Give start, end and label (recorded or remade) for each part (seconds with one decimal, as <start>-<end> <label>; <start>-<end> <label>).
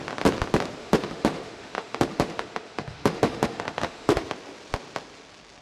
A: 0.0-0.8 recorded; 0.8-4.2 remade; 4.2-5.6 recorded